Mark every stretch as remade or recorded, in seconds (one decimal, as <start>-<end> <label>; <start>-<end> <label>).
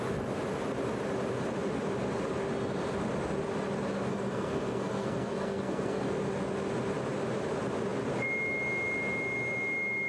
0.0-4.1 recorded; 4.1-6.0 remade; 6.0-10.1 recorded